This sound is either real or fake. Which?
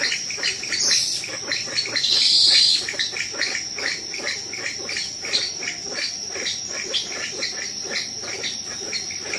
real